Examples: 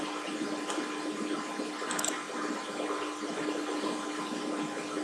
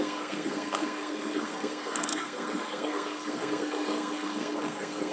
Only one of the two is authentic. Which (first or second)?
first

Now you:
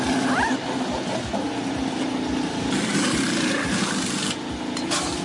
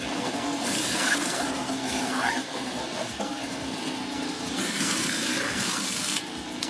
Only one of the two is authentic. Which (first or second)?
first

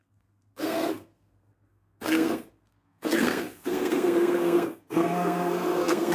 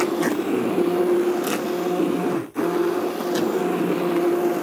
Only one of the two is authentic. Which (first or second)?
second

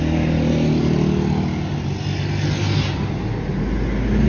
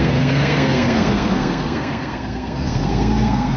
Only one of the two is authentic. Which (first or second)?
first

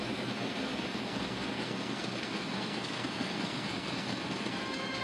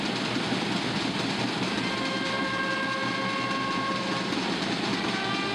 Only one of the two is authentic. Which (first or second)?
second